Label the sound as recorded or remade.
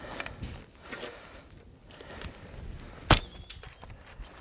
recorded